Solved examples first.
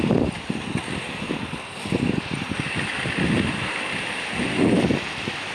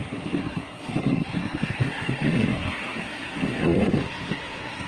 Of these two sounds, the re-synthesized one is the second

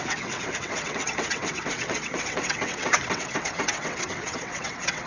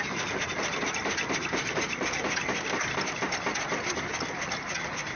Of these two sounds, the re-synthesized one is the first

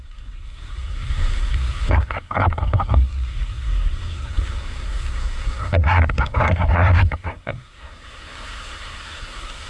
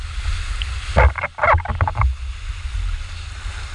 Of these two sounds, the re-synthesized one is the first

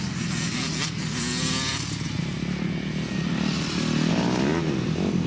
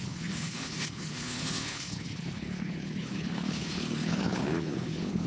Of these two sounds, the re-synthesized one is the second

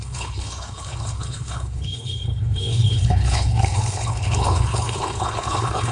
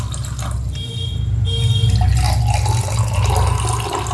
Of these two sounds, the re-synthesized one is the first